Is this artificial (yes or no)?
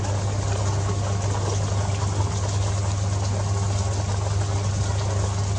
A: no